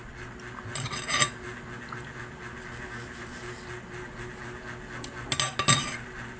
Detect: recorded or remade recorded